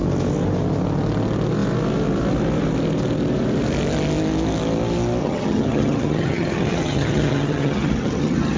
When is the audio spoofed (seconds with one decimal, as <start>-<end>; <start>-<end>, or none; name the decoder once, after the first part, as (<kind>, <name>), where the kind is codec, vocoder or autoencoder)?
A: 5.2-8.6 (vocoder, HiFi-GAN)

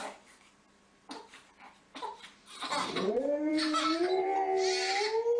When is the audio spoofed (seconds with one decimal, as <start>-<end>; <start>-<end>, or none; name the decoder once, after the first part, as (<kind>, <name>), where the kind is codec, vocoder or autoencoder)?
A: 2.0-4.4 (vocoder, BigVGAN v2)

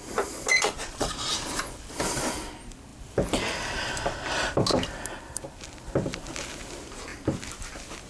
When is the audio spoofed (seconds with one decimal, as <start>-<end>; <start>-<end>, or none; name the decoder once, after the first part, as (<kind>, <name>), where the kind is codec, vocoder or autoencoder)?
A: 0.5-1.3 (vocoder, Vocos)

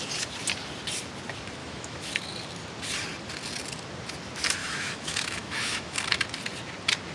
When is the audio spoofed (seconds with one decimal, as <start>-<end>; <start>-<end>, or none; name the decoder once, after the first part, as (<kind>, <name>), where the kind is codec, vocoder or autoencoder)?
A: 1.6-2.1 (autoencoder, DAC-VAE); 4.6-6.0

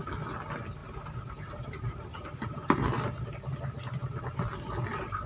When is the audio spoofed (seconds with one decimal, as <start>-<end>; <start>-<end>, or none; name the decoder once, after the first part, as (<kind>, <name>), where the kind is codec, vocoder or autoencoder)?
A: 0.8-3.3 (vocoder, BigVGAN v2)

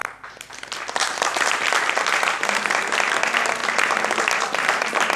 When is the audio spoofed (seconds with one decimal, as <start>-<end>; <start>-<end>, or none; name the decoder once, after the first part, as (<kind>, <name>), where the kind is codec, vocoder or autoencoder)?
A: none

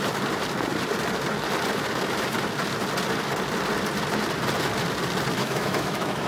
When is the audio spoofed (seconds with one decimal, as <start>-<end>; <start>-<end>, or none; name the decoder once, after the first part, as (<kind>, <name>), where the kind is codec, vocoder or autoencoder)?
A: 5.4-6.3 (autoencoder, DAC-VAE)

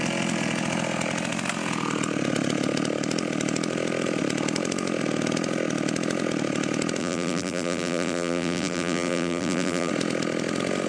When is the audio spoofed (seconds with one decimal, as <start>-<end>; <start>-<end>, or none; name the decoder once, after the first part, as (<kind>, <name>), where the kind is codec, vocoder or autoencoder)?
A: 7.0-9.9 (vocoder, BigVGAN v2)